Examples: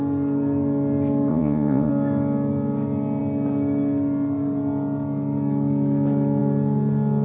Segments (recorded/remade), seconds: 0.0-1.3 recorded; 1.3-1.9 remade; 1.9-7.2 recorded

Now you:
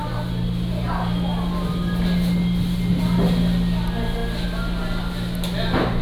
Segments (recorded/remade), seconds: 0.0-6.0 recorded

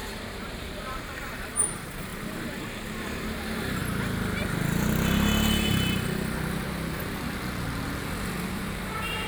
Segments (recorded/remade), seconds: 0.0-3.8 remade; 3.8-8.5 recorded; 8.5-9.3 remade

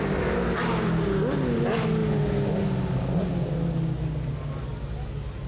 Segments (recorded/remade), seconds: 0.0-5.5 recorded

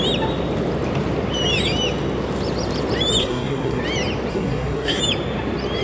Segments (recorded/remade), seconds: 0.0-3.2 recorded; 3.2-3.8 remade; 3.8-4.3 recorded; 4.3-5.0 remade; 5.0-5.8 recorded

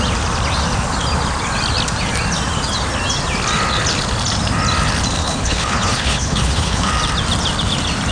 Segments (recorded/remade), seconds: 0.0-5.2 recorded; 5.2-6.9 remade; 6.9-8.1 recorded

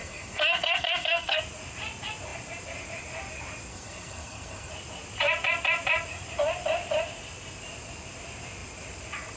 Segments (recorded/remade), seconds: 0.0-1.4 remade; 1.4-3.7 recorded; 3.7-4.7 remade; 4.7-9.4 recorded

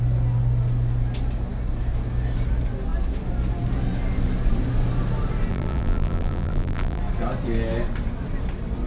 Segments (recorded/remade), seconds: 0.0-5.5 recorded; 5.5-7.0 remade; 7.0-8.9 recorded